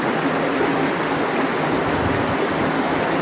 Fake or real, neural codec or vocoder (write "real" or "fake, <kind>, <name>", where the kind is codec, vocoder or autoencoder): real